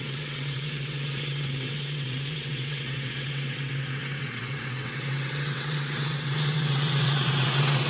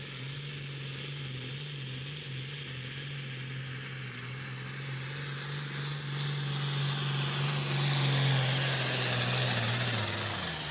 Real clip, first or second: second